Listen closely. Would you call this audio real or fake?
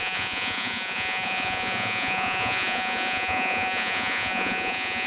fake